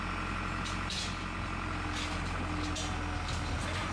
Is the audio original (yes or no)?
yes